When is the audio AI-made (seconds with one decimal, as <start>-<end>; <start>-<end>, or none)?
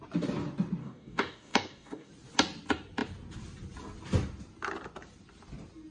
0.8-2.1